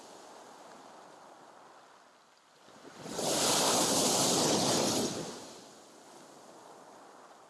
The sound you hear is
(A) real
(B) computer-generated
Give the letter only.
A